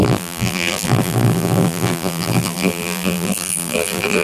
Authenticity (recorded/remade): remade